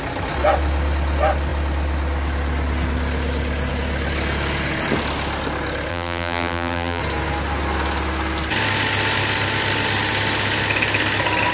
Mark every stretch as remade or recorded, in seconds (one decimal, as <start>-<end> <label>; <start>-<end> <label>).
0.0-5.9 recorded; 5.9-7.0 remade; 7.0-11.5 recorded